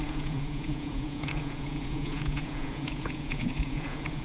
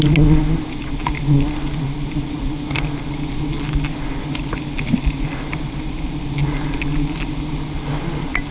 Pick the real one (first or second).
second